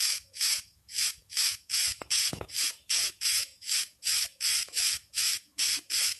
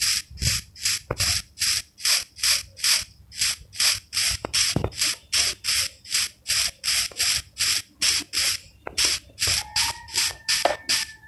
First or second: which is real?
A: second